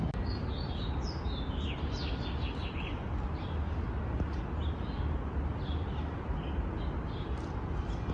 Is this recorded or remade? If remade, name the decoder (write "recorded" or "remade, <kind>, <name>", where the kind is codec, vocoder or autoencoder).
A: recorded